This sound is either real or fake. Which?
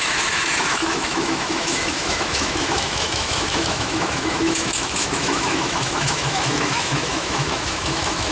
fake